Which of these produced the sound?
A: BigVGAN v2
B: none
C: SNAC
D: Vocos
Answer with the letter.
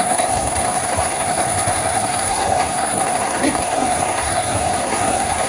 C